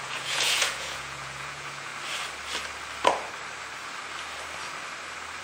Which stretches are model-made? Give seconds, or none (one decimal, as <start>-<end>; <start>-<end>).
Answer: 0.0-1.9